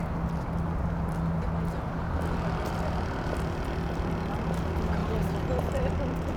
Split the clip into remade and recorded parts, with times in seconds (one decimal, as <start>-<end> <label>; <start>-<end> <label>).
0.0-5.0 recorded; 5.0-5.9 remade; 5.9-6.4 recorded